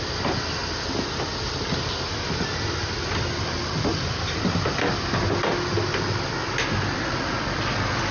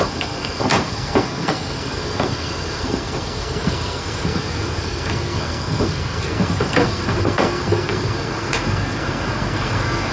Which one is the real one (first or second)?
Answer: first